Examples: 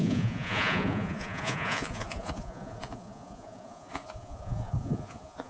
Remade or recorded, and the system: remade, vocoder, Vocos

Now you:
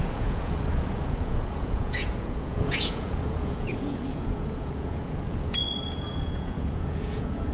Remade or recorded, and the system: remade, vocoder, Vocos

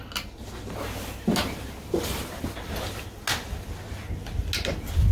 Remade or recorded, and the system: recorded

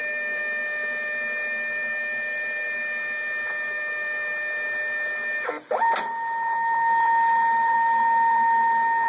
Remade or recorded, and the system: recorded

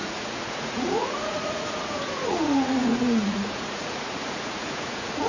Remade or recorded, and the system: remade, vocoder, Vocos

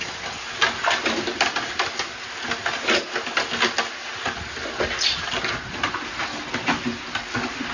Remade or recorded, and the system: recorded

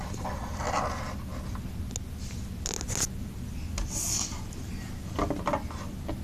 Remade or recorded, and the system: recorded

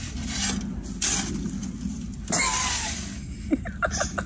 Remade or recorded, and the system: recorded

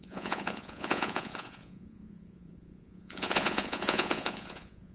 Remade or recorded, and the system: remade, vocoder, Vocos